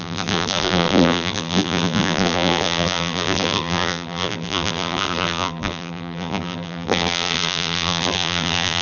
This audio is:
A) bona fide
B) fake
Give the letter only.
B